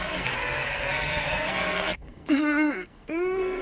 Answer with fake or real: fake